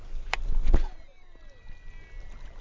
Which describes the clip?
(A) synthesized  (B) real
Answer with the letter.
B